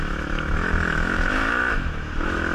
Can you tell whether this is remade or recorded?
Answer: remade